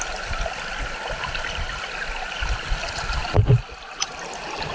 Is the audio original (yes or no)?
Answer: yes